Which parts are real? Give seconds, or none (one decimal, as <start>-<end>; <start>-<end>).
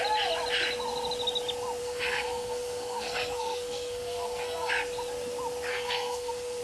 0.0-1.8; 4.7-5.7